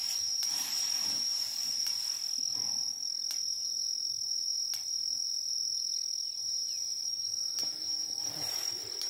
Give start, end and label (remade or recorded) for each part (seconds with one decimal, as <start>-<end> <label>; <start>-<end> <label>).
0.0-1.9 remade; 1.9-6.6 recorded; 6.6-9.1 remade